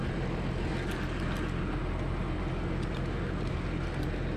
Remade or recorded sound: recorded